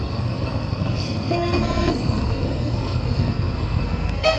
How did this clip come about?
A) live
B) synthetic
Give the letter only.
B